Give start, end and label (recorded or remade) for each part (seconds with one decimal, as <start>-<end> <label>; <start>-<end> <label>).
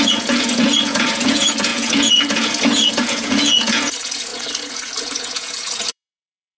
0.0-6.6 remade